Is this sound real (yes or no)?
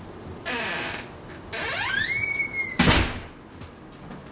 yes